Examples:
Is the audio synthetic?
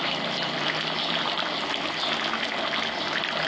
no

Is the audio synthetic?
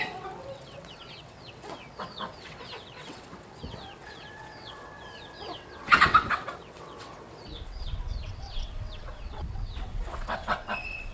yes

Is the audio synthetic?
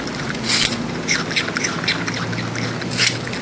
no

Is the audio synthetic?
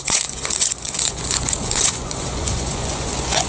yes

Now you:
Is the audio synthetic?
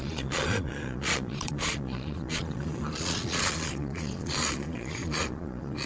yes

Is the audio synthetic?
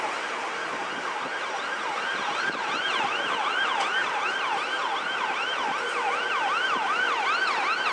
no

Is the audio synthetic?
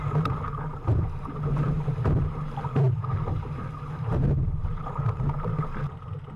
yes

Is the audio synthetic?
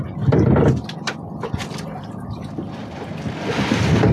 no